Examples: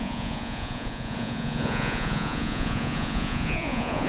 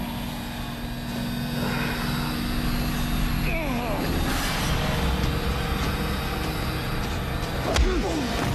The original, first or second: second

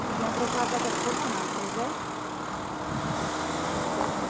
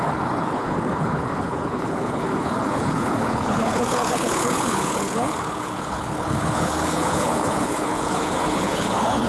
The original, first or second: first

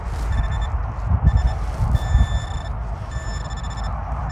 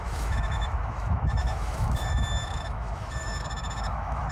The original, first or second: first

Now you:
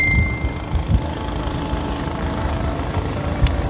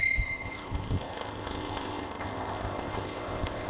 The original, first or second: first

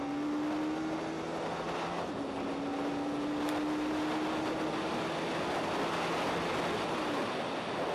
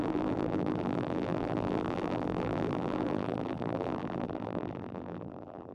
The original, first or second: first